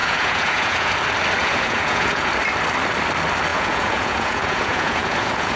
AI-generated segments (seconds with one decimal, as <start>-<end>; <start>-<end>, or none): 0.0-0.9; 1.4-2.3; 3.5-5.6

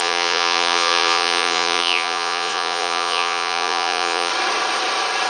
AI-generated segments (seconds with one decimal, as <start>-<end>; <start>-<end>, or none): 0.0-4.3

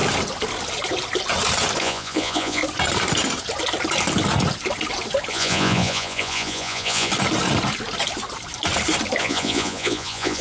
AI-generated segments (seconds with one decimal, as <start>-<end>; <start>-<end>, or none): 1.8-2.6; 5.3-7.1; 9.2-10.4

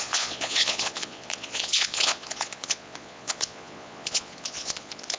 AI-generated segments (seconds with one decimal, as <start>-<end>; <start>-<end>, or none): 0.0-5.2

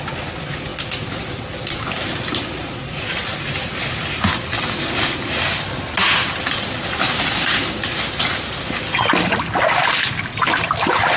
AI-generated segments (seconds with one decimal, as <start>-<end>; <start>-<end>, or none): none

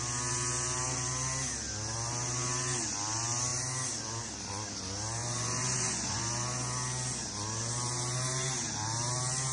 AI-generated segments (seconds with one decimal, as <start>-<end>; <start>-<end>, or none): 5.2-6.2

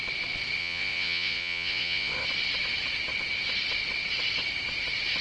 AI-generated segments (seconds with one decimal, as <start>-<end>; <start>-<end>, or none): 0.6-2.1